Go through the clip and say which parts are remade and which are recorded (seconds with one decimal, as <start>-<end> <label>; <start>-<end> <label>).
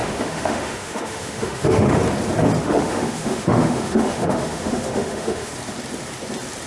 0.0-2.0 remade; 2.0-2.6 recorded; 2.6-5.5 remade; 5.5-6.7 recorded